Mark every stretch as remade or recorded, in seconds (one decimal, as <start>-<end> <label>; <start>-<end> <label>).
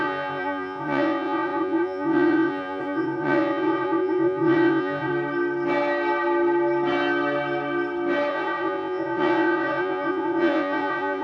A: 0.0-5.1 remade; 5.1-8.3 recorded; 8.3-11.2 remade